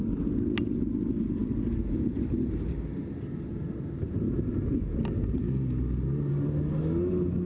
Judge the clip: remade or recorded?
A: recorded